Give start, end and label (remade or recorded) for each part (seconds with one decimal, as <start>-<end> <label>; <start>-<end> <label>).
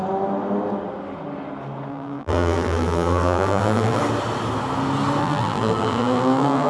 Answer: 0.0-1.9 recorded; 1.9-4.0 remade; 4.0-5.2 recorded; 5.2-6.7 remade